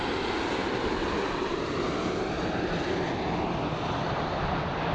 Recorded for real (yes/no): yes